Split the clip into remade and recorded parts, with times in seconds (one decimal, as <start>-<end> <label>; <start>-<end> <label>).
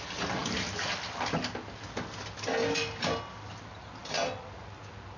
0.0-5.2 recorded